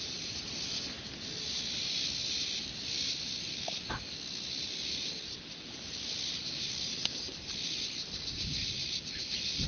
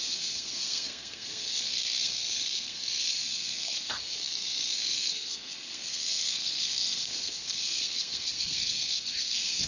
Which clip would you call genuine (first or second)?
first